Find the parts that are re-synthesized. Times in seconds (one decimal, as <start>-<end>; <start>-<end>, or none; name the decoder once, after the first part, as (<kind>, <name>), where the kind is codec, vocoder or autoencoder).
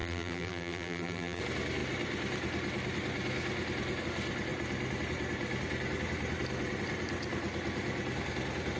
0.0-1.4 (vocoder, BigVGAN v2)